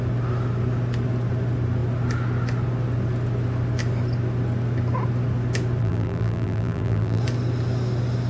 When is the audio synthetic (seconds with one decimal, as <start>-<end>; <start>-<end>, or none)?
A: 5.8-7.2